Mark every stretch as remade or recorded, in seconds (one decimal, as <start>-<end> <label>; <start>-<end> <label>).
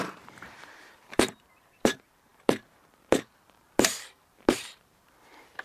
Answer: 0.0-5.6 remade